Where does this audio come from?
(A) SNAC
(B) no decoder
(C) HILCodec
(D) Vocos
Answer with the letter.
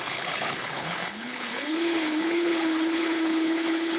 C